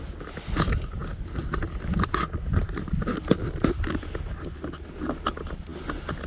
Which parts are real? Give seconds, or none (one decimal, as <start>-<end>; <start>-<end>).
0.0-1.0; 3.9-6.3